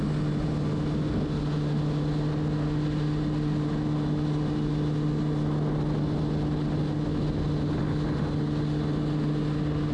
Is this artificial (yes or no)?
no